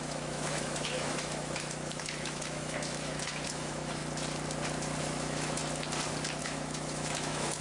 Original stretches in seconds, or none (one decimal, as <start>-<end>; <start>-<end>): 4.0-5.0; 5.6-6.4